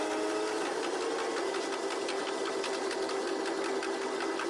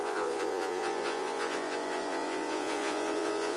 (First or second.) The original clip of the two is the first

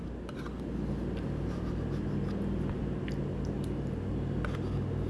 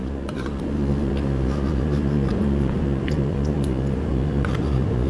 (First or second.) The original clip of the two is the first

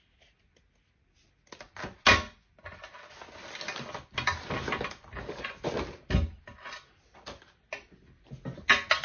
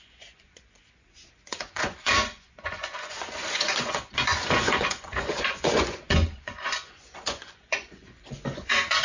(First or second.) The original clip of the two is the first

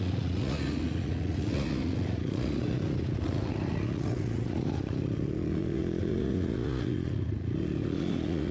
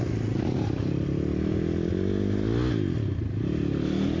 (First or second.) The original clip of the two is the second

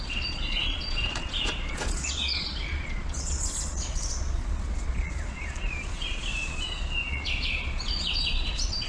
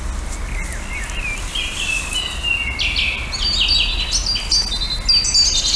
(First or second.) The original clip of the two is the second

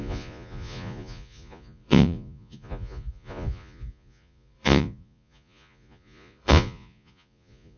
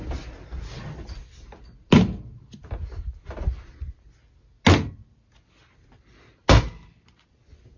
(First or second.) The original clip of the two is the second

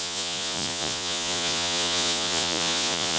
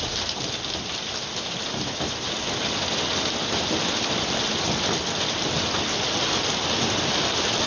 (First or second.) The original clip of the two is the second